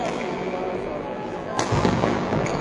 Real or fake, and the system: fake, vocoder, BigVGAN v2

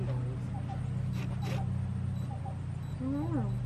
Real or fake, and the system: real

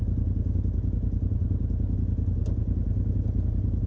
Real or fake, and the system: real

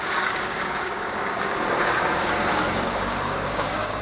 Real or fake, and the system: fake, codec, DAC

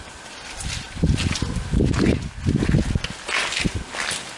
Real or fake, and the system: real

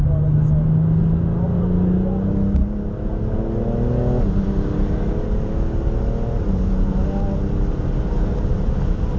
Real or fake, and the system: real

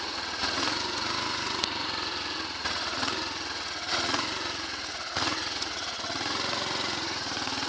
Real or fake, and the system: fake, vocoder, Vocos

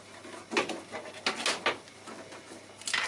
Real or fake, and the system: real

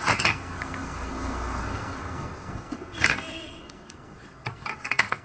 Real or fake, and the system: fake, codec, SNAC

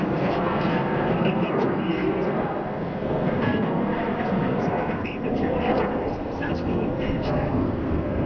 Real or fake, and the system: fake, codec, SNAC